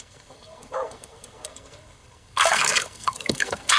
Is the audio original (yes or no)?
no